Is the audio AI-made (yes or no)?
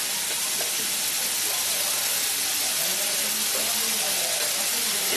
no